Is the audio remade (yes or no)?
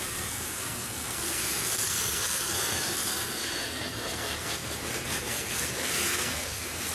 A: yes